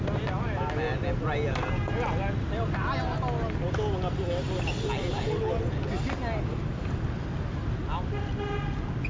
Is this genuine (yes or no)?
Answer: yes